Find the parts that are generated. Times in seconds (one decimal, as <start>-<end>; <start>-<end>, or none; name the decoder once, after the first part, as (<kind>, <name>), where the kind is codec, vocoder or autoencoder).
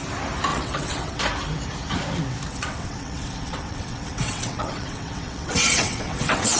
0.5-1.2 (vocoder, WaveNeXt); 2.5-6.6